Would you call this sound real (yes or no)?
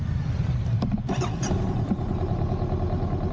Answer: yes